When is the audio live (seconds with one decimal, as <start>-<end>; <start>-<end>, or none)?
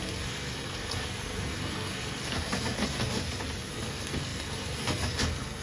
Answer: 3.2-3.7